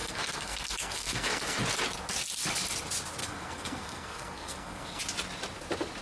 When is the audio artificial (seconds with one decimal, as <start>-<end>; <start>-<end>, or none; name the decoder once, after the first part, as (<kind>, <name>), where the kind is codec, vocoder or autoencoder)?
0.0-1.6 (codec, SNAC); 3.2-5.0